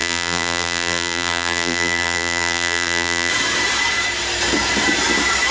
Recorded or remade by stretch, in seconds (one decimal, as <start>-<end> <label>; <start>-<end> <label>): 0.0-3.3 remade; 3.3-5.5 recorded